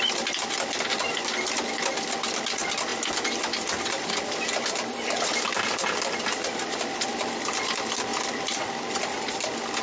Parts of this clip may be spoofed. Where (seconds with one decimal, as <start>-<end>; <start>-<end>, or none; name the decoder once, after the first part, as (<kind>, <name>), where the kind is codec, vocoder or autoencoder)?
none